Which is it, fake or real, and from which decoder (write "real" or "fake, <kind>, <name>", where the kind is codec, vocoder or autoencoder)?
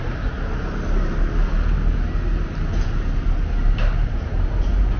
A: real